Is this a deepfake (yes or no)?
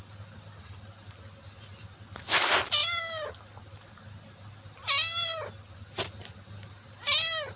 no